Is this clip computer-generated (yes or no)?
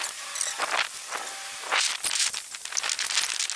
no